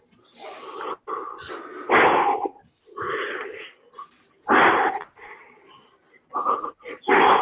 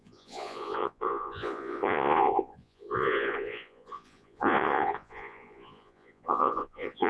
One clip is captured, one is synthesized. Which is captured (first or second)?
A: first